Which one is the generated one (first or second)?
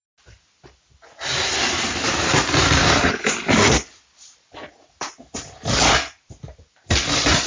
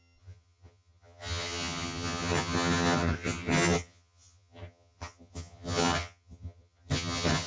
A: second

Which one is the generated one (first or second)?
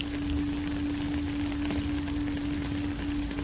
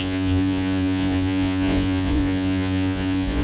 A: second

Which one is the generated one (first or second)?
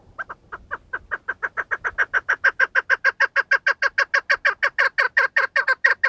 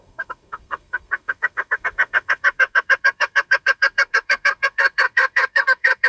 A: second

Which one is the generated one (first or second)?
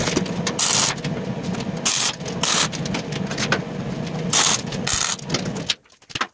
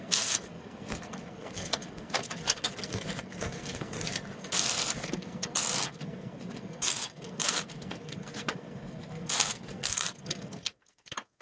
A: second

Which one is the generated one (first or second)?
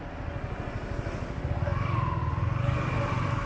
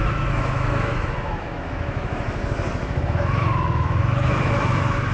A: second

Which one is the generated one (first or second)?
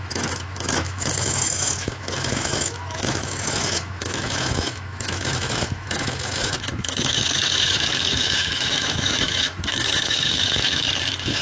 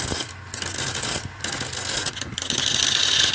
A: first